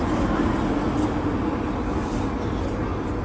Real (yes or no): yes